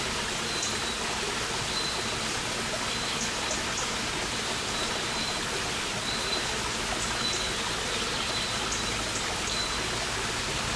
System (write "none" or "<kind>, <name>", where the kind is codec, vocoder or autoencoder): none